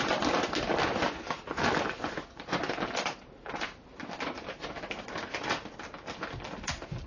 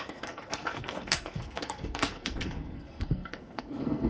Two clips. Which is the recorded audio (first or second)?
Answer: first